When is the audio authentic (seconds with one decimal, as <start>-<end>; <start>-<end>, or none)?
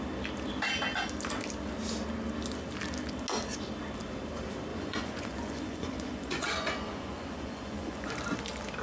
0.0-4.7; 8.1-8.8